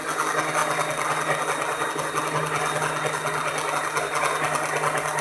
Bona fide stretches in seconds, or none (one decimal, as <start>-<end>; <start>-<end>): 0.0-5.2